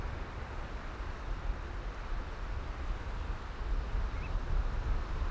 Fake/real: real